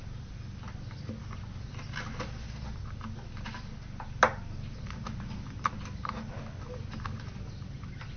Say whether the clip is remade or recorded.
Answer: recorded